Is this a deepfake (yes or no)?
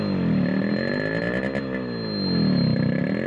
no